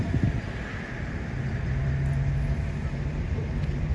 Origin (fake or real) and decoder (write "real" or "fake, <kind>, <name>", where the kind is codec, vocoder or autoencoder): real